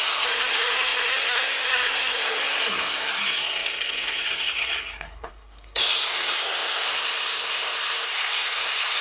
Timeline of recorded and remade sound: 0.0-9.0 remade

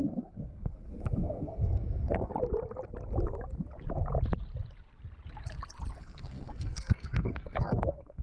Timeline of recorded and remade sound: 0.0-2.3 remade; 2.3-6.0 recorded; 6.0-8.2 remade

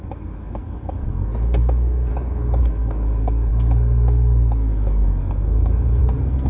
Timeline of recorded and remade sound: 0.0-2.1 remade; 2.1-2.6 recorded; 2.6-6.5 remade

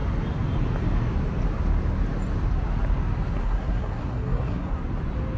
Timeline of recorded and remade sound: 0.0-3.4 recorded; 3.4-4.8 remade; 4.8-5.4 recorded

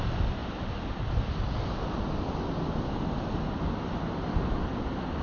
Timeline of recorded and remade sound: 0.0-5.2 recorded

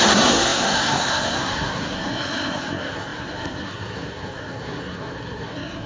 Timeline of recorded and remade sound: 0.0-5.9 remade